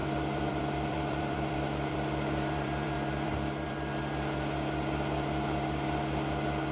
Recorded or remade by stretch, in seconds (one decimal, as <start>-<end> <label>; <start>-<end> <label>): 0.0-4.0 remade; 4.0-6.7 recorded